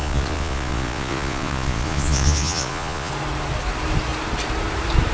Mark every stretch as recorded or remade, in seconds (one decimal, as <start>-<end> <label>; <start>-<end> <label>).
0.0-3.1 remade; 3.1-5.1 recorded